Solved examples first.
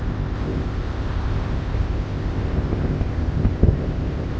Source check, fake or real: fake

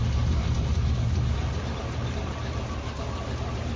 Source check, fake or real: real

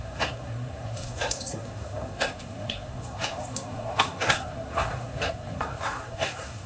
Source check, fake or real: fake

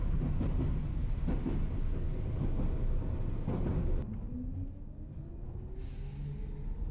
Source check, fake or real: real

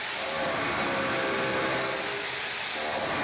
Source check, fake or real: real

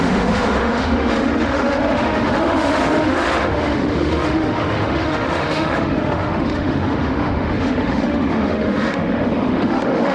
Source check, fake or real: fake